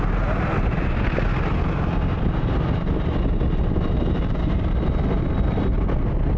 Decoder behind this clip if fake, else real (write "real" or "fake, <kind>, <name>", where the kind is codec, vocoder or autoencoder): real